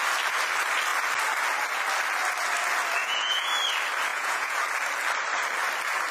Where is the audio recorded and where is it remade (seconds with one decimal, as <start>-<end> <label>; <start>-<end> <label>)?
0.0-3.0 recorded; 3.0-3.5 remade; 3.5-4.1 recorded; 4.1-4.6 remade; 4.6-6.1 recorded